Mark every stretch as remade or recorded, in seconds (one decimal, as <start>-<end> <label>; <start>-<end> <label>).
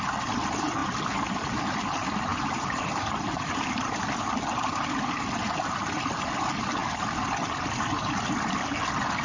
0.0-0.8 recorded; 0.8-1.6 remade; 1.6-2.3 recorded; 2.3-4.2 remade; 4.2-9.2 recorded